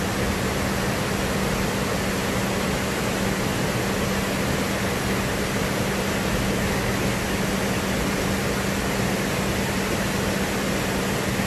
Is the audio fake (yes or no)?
no